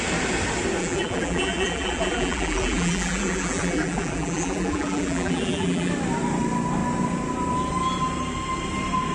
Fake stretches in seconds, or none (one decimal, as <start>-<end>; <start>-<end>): 0.8-5.9